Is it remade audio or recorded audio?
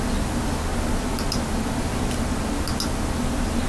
recorded